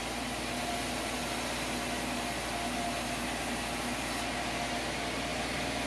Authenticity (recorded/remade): recorded